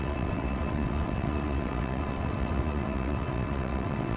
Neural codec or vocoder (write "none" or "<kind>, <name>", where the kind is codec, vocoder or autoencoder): vocoder, WaveNeXt